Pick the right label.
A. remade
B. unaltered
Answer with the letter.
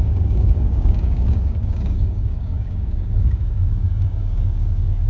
A